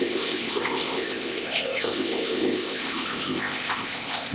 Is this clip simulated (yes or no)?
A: yes